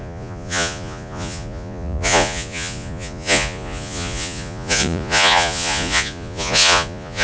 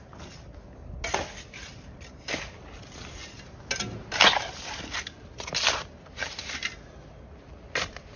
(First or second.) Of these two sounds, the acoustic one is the second